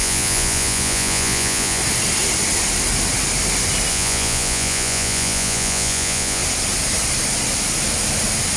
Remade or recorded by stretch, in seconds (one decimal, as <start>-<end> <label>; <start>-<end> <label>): 0.0-1.8 remade; 1.8-3.9 recorded; 3.9-6.4 remade; 6.4-8.6 recorded